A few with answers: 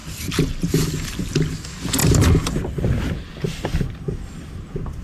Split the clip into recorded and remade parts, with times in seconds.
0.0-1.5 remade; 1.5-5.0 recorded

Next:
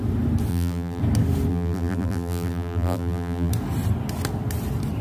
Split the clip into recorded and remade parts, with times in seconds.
0.0-0.5 recorded; 0.5-1.0 remade; 1.0-1.5 recorded; 1.5-3.5 remade; 3.5-5.0 recorded

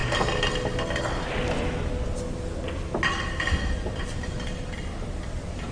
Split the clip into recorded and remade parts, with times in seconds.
0.0-3.4 recorded; 3.4-5.7 remade

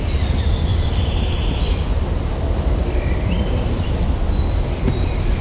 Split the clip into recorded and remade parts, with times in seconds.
0.0-0.7 recorded; 0.7-3.9 remade; 3.9-5.4 recorded